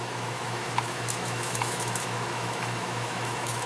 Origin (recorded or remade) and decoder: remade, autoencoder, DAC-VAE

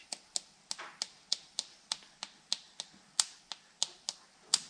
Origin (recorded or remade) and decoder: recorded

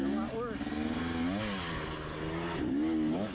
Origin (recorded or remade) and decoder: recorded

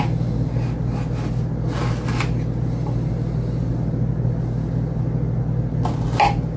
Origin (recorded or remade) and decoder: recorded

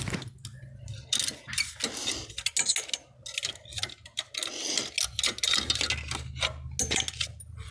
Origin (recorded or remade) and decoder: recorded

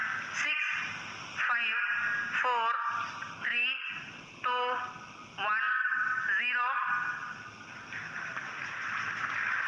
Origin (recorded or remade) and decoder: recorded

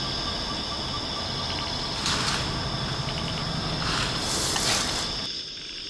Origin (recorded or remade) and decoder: recorded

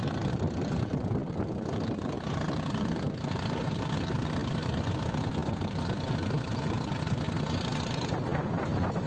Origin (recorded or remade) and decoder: recorded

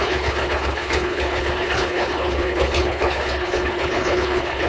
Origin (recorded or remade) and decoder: remade, codec, HILCodec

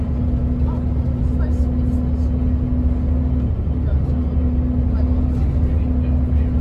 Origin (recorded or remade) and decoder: recorded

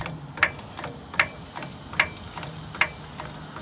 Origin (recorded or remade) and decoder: recorded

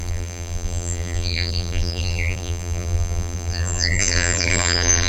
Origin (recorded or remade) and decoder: remade, vocoder, BigVGAN v2